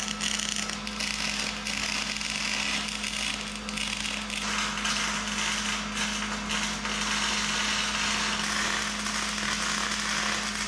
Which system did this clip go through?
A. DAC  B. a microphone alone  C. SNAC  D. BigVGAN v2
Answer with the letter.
B